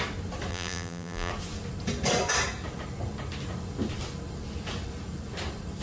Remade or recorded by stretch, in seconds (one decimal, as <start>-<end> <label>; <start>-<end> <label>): 0.0-0.5 recorded; 0.5-1.3 remade; 1.3-5.8 recorded